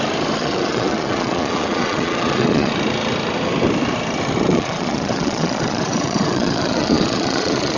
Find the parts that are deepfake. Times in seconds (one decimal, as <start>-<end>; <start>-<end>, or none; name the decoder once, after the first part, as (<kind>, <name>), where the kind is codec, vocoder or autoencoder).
0.4-2.7 (vocoder, Vocos); 4.5-7.8

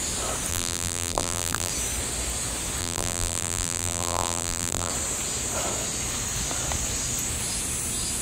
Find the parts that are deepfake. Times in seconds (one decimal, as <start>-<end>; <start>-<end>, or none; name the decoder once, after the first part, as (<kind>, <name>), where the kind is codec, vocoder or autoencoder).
0.5-1.7 (vocoder, BigVGAN v2); 2.8-4.9

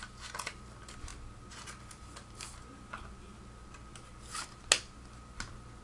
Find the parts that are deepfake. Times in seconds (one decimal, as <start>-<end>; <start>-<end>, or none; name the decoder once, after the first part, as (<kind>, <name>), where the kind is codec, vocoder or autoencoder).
none

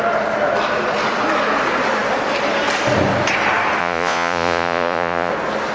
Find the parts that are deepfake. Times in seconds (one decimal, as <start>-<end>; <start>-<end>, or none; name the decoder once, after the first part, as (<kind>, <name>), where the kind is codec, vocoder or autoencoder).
3.8-5.3 (vocoder, Vocos)

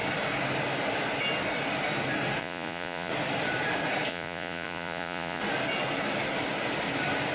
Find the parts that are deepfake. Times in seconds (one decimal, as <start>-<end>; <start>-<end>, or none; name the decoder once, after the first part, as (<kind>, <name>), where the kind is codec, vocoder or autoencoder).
2.4-3.1 (vocoder, Vocos); 4.1-5.4

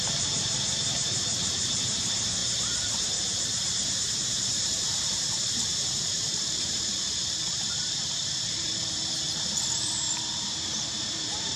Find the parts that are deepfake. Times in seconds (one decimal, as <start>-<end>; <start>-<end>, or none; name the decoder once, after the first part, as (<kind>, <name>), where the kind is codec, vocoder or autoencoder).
0.0-11.6 (vocoder, BigVGAN v2)

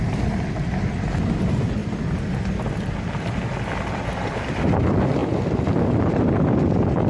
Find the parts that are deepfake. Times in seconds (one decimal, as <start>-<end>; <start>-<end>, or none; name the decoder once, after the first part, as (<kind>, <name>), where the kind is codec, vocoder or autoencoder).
none